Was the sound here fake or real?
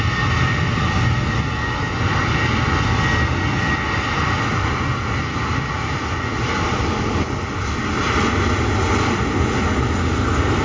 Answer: real